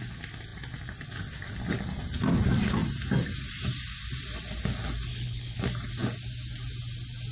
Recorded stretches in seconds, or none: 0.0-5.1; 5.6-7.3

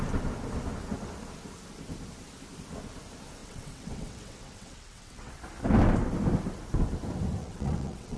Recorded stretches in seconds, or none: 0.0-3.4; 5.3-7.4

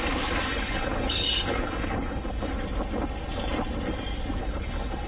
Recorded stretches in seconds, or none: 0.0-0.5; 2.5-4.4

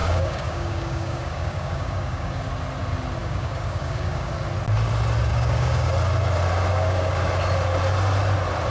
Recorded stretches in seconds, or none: 2.5-3.2; 4.3-5.3; 5.9-6.7; 7.2-8.7

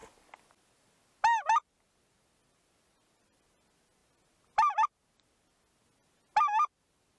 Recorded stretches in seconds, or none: 0.0-7.2